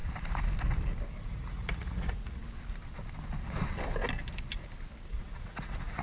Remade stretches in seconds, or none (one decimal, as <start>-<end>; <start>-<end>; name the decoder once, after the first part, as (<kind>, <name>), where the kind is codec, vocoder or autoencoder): 1.2-2.4 (vocoder, Vocos); 5.1-6.0